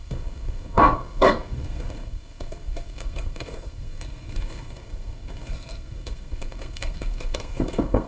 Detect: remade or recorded remade